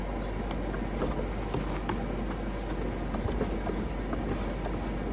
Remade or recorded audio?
recorded